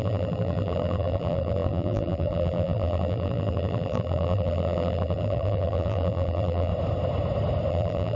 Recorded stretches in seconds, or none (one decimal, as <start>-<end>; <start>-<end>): 6.7-7.7